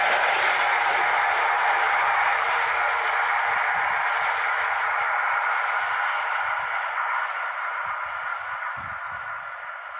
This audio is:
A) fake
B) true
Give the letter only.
B